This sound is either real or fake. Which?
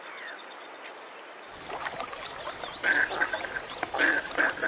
real